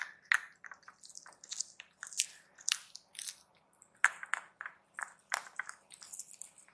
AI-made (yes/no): no